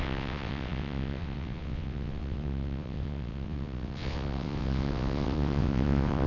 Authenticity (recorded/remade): remade